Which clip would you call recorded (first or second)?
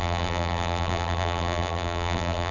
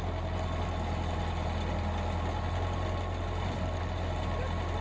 second